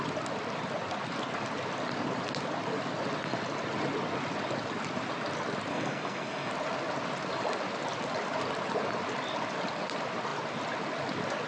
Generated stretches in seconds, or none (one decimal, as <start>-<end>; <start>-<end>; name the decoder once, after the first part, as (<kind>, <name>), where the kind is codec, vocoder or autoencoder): 5.7-6.5 (codec, SNAC)